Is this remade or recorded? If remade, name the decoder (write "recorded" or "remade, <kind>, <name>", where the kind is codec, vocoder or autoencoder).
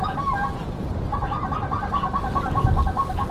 recorded